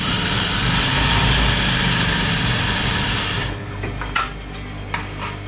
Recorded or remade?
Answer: recorded